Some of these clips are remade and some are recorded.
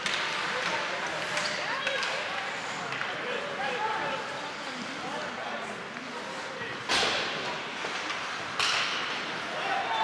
recorded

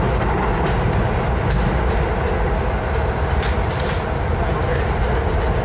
recorded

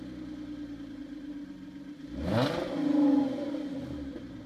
recorded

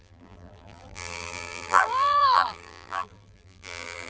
remade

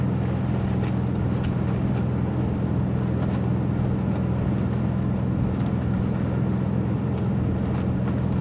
recorded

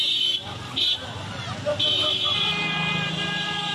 remade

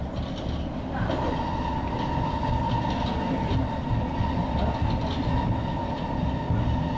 recorded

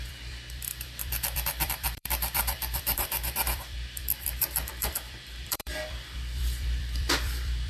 remade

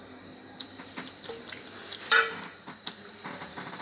remade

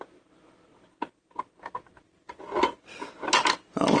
recorded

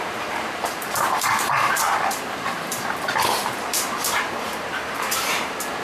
remade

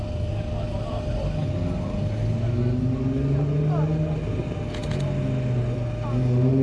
recorded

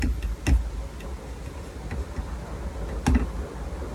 recorded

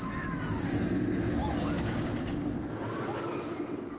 recorded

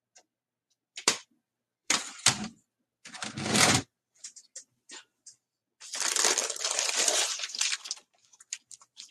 remade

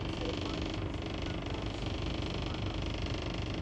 remade